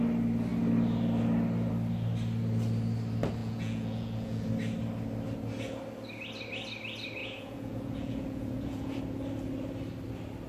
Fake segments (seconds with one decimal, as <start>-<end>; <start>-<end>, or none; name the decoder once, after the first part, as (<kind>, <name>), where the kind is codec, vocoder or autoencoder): 3.4-4.5 (vocoder, Vocos); 7.2-9.0

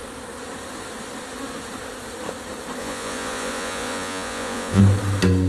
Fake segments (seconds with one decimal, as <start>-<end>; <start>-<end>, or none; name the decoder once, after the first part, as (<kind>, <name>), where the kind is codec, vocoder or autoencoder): 2.8-4.8 (vocoder, Vocos)

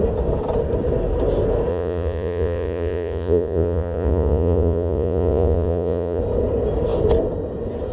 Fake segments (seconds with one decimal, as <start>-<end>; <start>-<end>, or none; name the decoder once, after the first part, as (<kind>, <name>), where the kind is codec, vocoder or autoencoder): 1.7-6.2 (vocoder, Vocos)

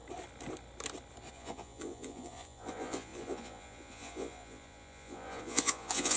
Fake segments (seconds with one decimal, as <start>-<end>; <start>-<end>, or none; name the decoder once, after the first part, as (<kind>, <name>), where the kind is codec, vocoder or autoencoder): 1.3-6.2 (vocoder, Vocos)

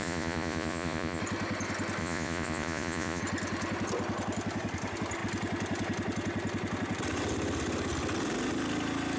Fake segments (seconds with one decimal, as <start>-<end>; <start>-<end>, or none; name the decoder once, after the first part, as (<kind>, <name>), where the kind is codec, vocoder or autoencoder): 0.0-1.2 (vocoder, Vocos); 2.0-3.2